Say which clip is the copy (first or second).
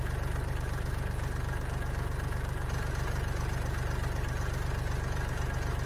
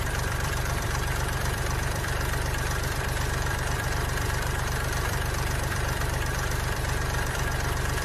second